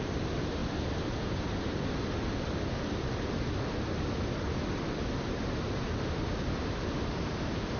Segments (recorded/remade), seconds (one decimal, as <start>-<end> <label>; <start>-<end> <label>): 0.0-0.6 remade; 0.6-5.3 recorded; 5.3-7.8 remade